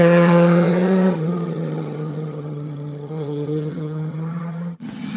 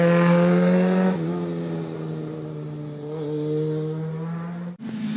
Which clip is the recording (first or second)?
second